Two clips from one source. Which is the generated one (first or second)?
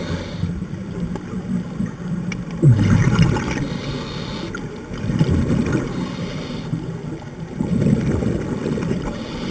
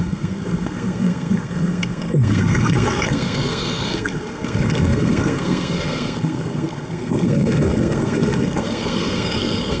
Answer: second